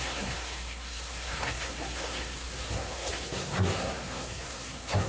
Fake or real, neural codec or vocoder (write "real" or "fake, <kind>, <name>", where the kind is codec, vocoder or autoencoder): fake, codec, SNAC